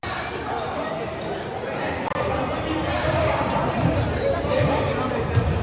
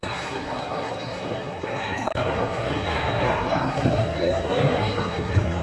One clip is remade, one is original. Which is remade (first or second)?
second